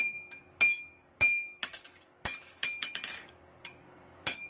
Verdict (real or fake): fake